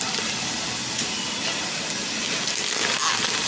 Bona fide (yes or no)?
yes